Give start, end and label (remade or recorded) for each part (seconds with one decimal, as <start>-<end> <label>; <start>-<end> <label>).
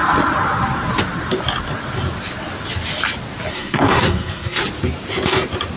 0.0-3.5 recorded; 3.5-4.6 remade; 4.6-5.8 recorded